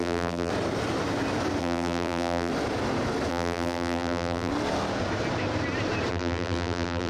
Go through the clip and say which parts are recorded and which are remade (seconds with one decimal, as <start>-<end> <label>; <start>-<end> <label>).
0.0-0.5 remade; 0.5-1.6 recorded; 1.6-2.5 remade; 2.5-3.3 recorded; 3.3-4.5 remade; 4.5-6.1 recorded; 6.1-7.1 remade